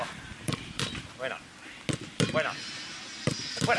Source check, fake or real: real